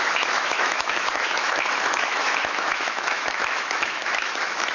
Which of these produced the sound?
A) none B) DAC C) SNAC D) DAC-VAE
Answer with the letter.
D